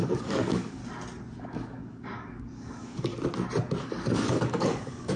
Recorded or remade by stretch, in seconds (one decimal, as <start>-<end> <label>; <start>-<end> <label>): 0.0-0.8 remade; 0.8-1.4 recorded; 1.4-3.1 remade; 3.1-3.8 recorded; 3.8-5.2 remade